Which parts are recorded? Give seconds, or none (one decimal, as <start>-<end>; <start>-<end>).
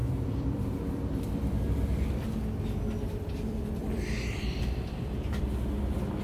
1.6-3.8; 4.6-6.2